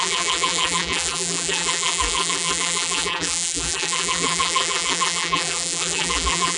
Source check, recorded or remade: remade